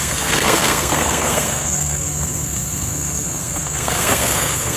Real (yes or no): no